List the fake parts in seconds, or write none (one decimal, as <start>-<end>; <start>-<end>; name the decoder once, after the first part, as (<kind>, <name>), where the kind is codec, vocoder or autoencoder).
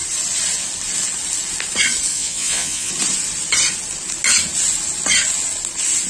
2.1-2.9 (vocoder, Vocos)